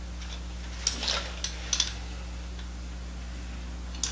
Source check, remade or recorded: recorded